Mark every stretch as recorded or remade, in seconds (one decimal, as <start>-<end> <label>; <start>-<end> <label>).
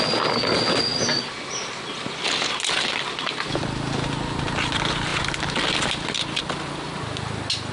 0.0-7.7 recorded